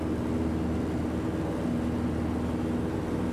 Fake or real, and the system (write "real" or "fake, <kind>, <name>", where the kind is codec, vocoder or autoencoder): real